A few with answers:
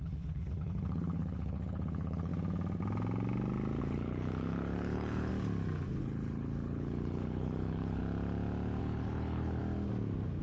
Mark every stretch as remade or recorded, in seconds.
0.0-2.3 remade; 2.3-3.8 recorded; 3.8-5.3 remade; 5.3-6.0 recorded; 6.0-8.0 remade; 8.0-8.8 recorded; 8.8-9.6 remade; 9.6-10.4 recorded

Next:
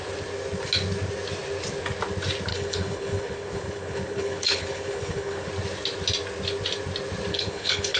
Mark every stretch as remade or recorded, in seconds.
0.0-2.5 recorded; 2.5-5.5 remade; 5.5-7.3 recorded; 7.3-8.0 remade

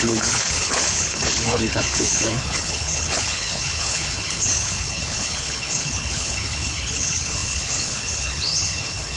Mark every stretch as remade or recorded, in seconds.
0.0-9.2 remade

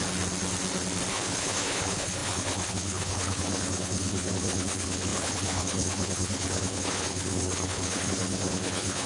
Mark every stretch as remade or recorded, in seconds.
0.0-1.1 recorded; 1.1-9.1 remade

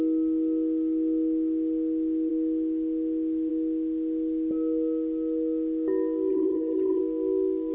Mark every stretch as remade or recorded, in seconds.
0.0-6.3 recorded; 6.3-7.0 remade; 7.0-7.7 recorded

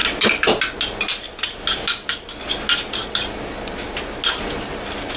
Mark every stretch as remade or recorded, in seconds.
0.0-5.2 recorded